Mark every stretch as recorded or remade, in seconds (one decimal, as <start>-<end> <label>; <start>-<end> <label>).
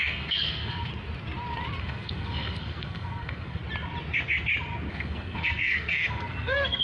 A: 0.0-0.9 remade; 0.9-1.8 recorded; 1.8-3.6 remade; 3.6-4.9 recorded; 4.9-6.8 remade